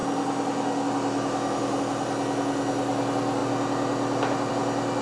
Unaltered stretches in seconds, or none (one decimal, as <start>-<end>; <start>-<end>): 0.0-5.0